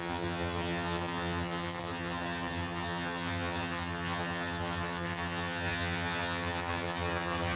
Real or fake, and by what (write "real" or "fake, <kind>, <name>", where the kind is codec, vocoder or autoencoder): fake, vocoder, HiFi-GAN